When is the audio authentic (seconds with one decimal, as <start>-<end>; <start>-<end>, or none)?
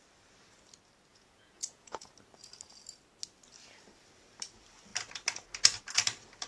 0.0-1.1; 2.1-6.5